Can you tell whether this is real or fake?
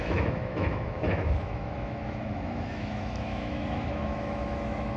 fake